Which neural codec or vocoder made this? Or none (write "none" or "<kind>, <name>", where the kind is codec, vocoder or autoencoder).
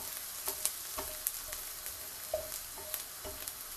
none